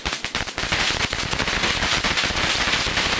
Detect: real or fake real